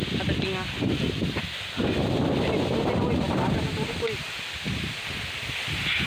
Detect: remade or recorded recorded